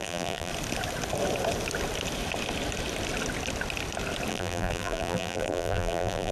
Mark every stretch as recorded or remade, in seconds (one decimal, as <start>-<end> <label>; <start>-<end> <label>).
0.0-0.5 remade; 0.5-4.3 recorded; 4.3-6.3 remade

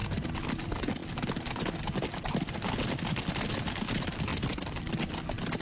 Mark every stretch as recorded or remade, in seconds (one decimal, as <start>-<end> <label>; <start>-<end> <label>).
0.0-0.5 remade; 0.5-4.3 recorded; 4.3-4.9 remade; 4.9-5.6 recorded

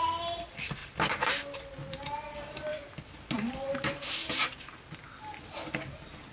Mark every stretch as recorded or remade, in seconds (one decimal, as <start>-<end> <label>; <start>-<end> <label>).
0.0-6.3 recorded

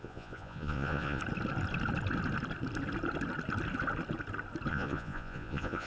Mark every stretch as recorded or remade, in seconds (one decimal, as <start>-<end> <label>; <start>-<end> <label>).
0.0-1.2 remade; 1.2-4.7 recorded; 4.7-5.9 remade

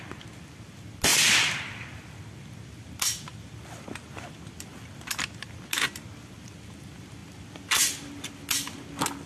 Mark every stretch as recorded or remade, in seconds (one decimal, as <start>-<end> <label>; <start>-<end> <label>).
0.0-9.3 recorded

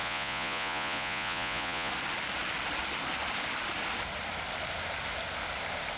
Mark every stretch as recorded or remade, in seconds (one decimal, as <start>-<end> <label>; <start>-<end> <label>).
0.0-1.9 remade; 1.9-6.0 recorded

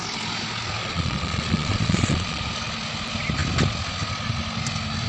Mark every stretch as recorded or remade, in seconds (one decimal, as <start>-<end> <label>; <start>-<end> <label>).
0.0-0.8 recorded; 0.8-2.4 remade; 2.4-5.1 recorded